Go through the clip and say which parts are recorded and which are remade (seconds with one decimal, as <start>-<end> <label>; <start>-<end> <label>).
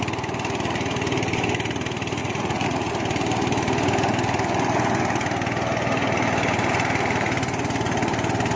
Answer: 0.0-2.2 recorded; 2.2-2.9 remade; 2.9-8.6 recorded